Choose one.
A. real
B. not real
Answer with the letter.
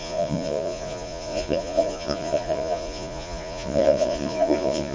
B